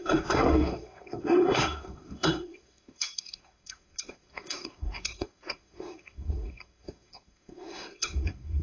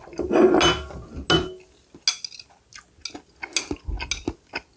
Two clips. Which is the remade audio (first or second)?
first